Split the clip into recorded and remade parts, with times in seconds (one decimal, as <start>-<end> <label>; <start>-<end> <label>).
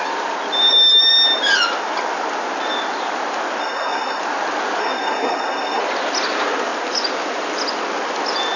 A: 0.0-3.6 recorded; 3.6-4.2 remade; 4.2-4.8 recorded; 4.8-5.8 remade; 5.8-8.6 recorded